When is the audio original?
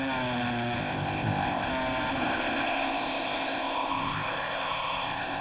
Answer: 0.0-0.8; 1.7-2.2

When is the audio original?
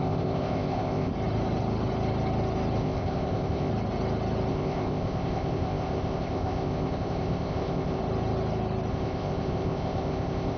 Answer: 1.1-2.8; 3.7-4.5; 8.0-8.9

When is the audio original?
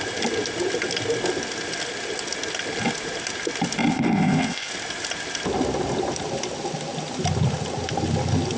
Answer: 0.0-3.9; 4.7-8.6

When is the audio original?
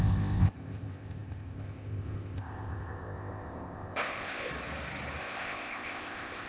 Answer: 4.5-5.2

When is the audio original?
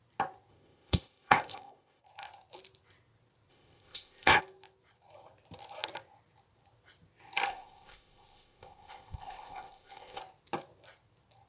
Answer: 0.0-0.5; 2.0-3.5; 4.4-7.5; 10.2-11.5